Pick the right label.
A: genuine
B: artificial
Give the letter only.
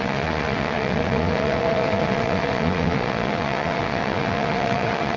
B